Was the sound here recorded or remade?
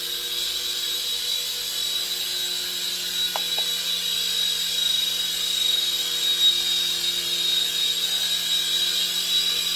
recorded